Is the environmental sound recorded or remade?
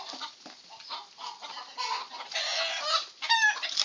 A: recorded